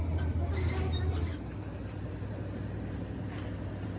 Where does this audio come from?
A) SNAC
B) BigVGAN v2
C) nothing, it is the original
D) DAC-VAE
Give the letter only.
C